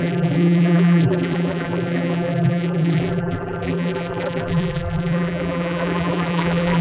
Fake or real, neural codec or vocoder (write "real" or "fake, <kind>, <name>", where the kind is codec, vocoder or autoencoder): fake, vocoder, BigVGAN v2